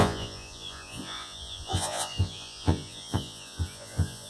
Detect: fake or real fake